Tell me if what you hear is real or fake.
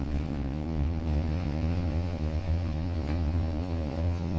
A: fake